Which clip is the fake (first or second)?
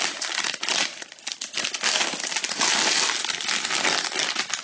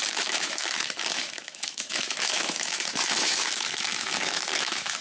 second